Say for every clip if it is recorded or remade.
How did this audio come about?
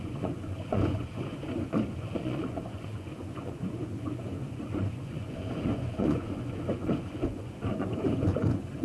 remade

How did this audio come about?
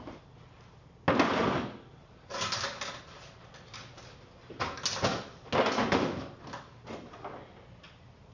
recorded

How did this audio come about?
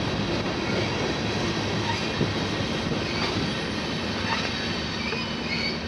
recorded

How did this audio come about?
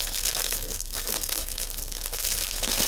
remade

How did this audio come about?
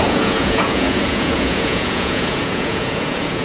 remade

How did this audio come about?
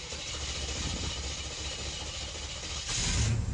recorded